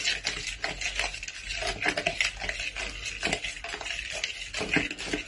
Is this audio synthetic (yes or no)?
no